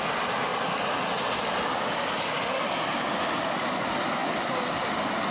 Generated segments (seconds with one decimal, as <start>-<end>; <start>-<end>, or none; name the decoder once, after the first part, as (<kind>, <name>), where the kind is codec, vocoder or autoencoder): none